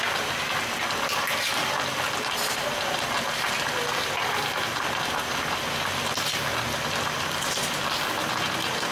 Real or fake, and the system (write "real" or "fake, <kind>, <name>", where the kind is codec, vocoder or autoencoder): real